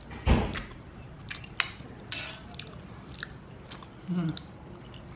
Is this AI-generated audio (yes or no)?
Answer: no